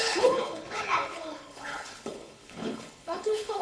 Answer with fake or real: fake